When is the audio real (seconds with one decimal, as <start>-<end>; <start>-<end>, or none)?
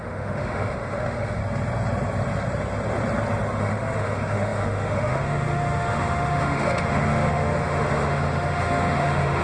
1.4-3.6